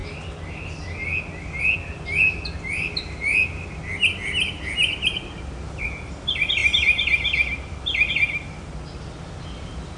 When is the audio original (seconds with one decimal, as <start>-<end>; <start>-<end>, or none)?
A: 0.0-10.0